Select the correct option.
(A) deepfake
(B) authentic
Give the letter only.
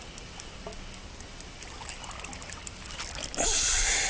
B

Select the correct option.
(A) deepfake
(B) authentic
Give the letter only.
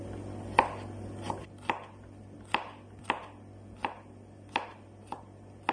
B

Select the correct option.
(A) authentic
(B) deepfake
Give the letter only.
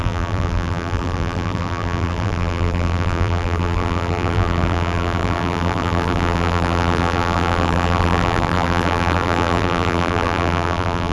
B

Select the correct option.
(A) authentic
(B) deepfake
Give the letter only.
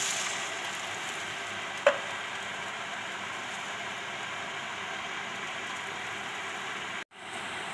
A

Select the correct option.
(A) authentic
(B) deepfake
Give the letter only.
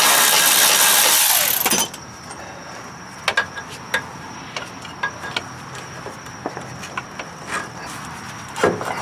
A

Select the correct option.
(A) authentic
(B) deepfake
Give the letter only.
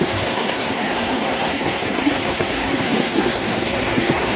B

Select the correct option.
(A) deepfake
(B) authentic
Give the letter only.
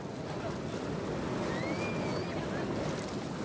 B